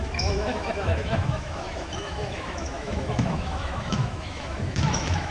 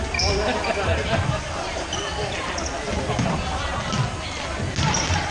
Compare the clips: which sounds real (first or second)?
second